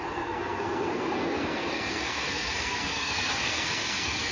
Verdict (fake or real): fake